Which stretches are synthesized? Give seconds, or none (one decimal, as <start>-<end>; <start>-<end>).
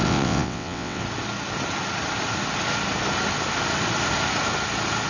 0.0-1.0